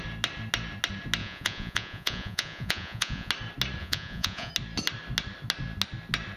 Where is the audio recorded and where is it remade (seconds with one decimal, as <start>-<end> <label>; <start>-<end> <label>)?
0.0-1.2 recorded; 1.2-3.3 remade; 3.3-3.8 recorded; 3.8-4.5 remade; 4.5-6.4 recorded